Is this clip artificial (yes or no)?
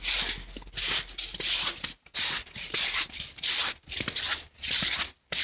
no